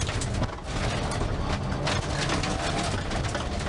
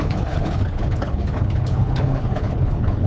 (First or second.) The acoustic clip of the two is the first